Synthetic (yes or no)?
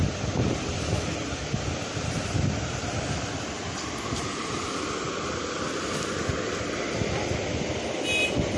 no